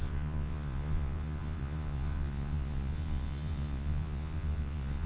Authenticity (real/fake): fake